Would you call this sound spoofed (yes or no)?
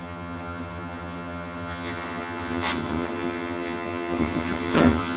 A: yes